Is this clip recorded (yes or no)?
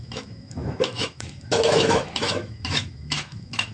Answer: no